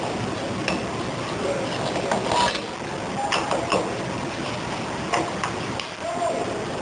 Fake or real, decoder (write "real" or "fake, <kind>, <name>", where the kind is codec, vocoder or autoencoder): real